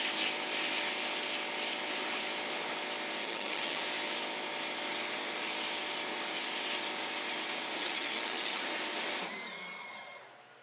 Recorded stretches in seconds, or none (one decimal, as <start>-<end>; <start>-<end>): 0.0-3.2; 3.8-7.8; 8.6-10.6